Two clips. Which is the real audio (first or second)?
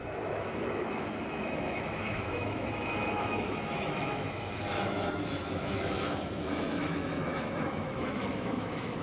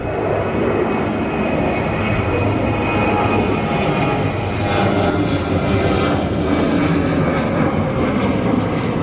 second